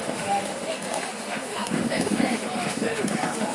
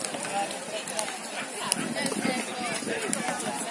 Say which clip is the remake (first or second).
first